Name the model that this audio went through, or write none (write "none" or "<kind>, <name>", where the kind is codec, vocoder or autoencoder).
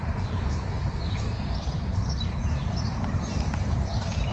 vocoder, BigVGAN v2